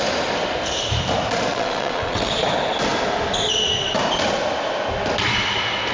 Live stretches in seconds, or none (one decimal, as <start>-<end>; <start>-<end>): 0.0-1.5; 2.3-5.9